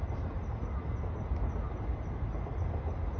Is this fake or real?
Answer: real